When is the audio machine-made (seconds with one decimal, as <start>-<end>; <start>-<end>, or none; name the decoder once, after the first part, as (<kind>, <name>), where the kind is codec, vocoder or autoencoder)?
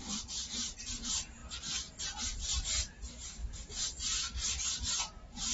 0.0-1.4 (vocoder, BigVGAN v2); 2.2-5.5